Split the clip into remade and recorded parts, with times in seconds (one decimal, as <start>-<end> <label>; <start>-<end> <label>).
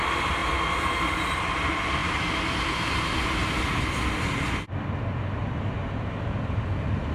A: 0.0-7.1 recorded